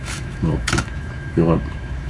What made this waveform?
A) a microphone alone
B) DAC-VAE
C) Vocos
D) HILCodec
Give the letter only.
B